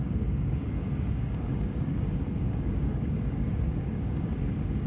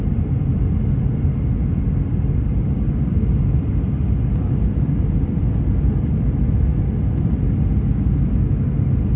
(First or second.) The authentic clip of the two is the second